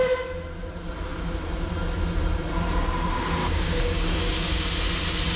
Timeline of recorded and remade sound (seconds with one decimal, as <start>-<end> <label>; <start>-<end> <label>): 0.0-3.4 recorded; 3.4-4.6 remade; 4.6-5.4 recorded